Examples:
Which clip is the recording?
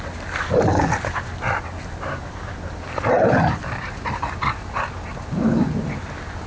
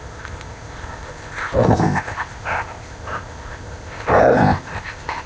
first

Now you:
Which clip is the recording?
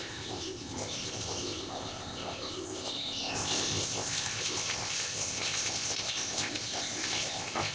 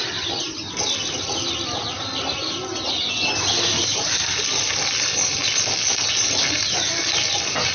second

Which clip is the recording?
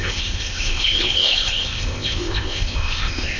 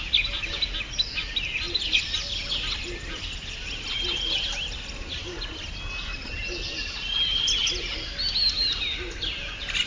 second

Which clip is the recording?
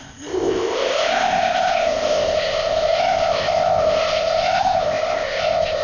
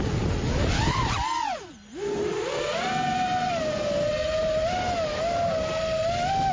second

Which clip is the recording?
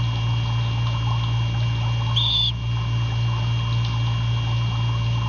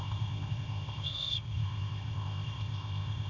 first